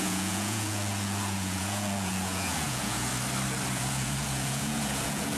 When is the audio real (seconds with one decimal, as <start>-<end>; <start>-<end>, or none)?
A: 3.1-3.7